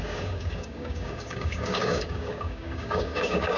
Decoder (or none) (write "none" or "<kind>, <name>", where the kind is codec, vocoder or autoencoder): codec, DAC